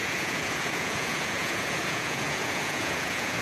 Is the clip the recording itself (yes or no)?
no